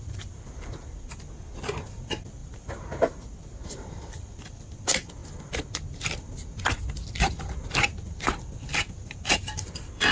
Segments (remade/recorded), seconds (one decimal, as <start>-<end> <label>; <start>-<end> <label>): 0.0-5.2 remade; 5.2-7.1 recorded; 7.1-10.1 remade